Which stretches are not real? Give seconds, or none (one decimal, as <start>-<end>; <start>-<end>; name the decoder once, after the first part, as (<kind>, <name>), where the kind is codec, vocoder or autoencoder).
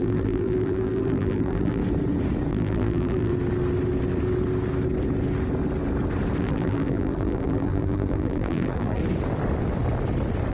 0.0-1.8 (vocoder, BigVGAN v2); 2.5-3.3; 6.4-9.0